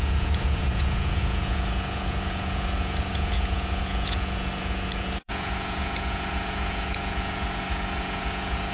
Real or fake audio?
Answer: fake